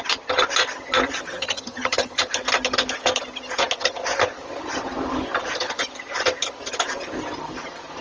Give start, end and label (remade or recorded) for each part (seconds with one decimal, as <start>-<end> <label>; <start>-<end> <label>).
0.0-1.4 recorded; 1.4-2.2 remade; 2.2-8.0 recorded